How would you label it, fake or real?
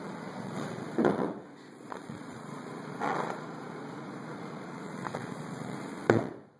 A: fake